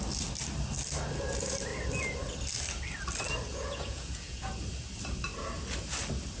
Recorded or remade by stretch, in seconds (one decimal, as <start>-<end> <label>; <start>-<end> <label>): 0.0-3.5 recorded; 3.5-4.5 remade; 4.5-6.4 recorded